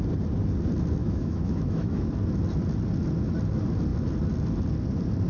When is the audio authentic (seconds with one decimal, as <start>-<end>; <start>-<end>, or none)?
0.0-1.0; 2.1-5.3